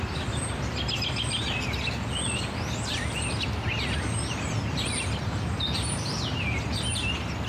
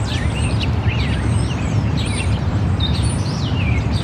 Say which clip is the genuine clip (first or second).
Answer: first